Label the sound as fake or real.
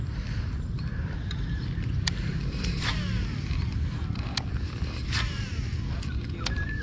real